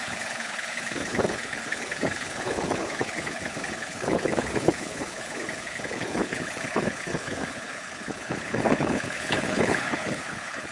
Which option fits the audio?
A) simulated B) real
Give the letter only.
A